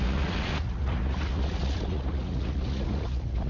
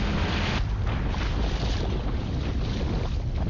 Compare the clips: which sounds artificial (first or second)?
first